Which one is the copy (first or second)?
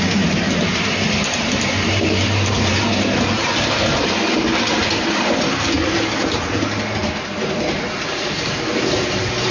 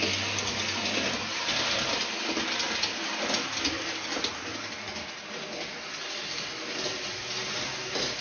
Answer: first